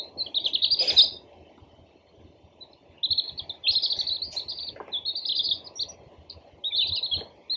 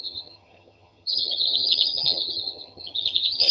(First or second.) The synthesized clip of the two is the second